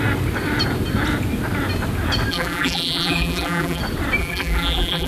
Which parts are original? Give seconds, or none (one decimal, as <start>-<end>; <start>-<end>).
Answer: 0.0-2.3; 3.8-4.2